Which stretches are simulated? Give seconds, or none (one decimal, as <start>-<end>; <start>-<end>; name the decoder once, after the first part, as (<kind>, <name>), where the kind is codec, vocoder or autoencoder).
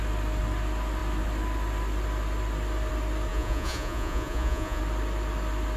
3.3-4.8 (vocoder, Vocos)